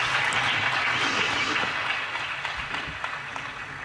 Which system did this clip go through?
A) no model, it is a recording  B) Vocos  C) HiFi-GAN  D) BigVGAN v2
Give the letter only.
A